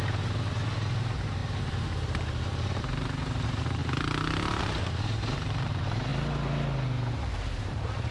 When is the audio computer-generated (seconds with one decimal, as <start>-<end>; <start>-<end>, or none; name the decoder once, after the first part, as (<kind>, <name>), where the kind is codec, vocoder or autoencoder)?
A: 0.0-3.8 (vocoder, BigVGAN v2); 4.6-6.1; 7.1-8.1